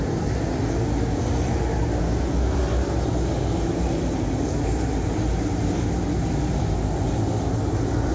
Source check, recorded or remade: recorded